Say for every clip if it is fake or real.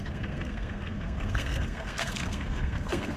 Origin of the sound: fake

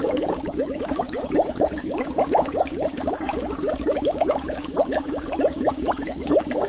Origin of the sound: fake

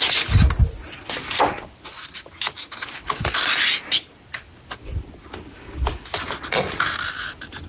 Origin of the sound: real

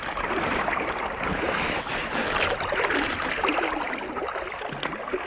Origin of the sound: real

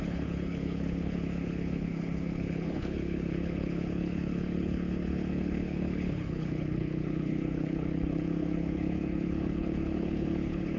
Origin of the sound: fake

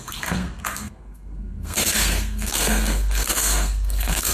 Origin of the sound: fake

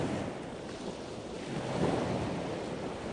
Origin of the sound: real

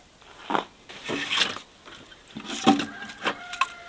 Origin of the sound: real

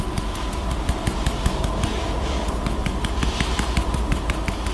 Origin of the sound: real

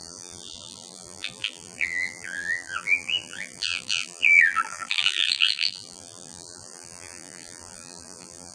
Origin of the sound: fake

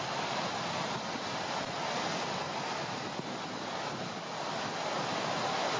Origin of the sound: real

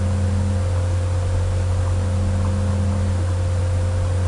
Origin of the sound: real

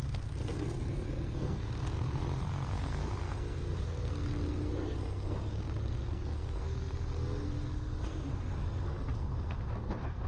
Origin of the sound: fake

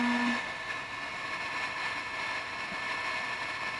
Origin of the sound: real